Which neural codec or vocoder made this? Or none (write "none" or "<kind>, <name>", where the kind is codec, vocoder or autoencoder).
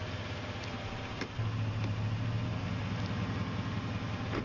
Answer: none